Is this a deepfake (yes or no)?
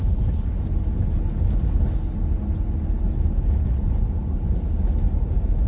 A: no